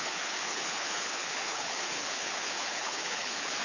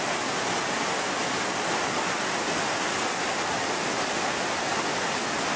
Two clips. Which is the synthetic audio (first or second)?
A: first